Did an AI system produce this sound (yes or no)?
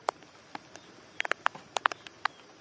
no